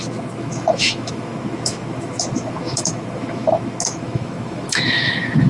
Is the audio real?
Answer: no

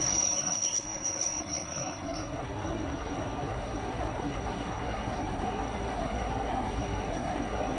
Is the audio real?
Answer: no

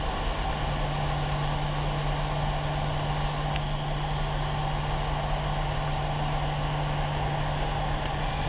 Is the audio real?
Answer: yes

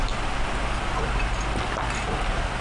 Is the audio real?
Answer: yes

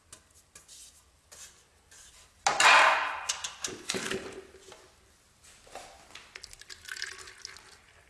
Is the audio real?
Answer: yes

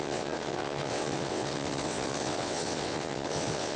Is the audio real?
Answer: no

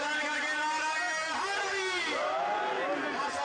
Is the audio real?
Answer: yes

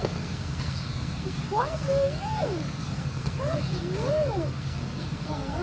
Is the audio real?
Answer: no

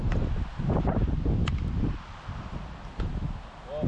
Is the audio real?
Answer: yes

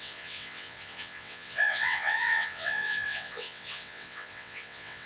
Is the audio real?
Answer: no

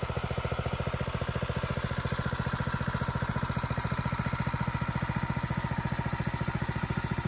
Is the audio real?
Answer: yes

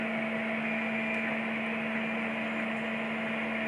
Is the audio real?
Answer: yes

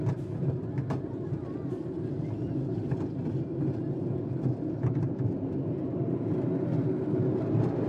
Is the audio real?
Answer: yes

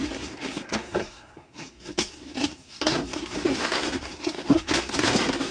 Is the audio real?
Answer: no